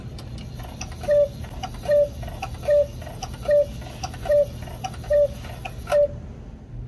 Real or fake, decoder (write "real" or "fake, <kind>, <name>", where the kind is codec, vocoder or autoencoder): real